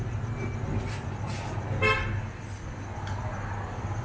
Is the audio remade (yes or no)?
no